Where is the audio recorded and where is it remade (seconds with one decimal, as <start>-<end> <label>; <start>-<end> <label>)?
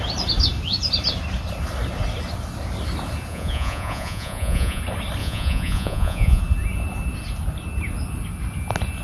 0.0-3.3 recorded; 3.3-4.8 remade; 4.8-5.2 recorded; 5.2-6.4 remade; 6.4-9.0 recorded